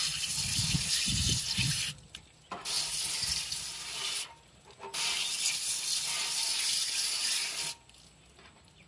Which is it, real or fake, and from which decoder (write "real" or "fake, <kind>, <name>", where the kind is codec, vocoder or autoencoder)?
real